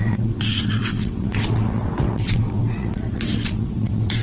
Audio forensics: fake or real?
fake